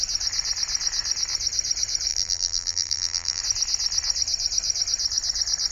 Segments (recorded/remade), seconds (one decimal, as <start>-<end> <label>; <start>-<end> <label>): 0.0-2.1 recorded; 2.1-3.4 remade; 3.4-5.7 recorded